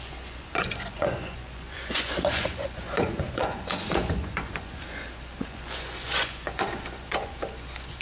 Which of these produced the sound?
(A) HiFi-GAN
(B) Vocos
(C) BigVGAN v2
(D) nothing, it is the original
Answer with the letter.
B